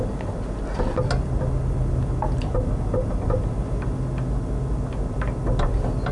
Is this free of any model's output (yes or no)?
yes